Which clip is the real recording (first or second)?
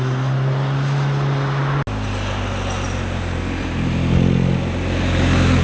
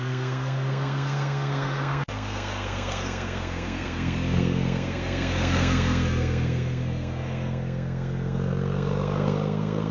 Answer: first